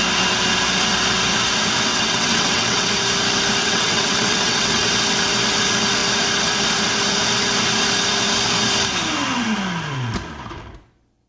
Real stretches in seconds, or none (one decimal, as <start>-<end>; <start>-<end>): 0.0-1.9; 2.9-3.6; 4.9-11.3